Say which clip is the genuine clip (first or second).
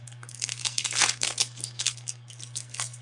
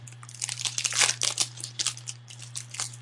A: second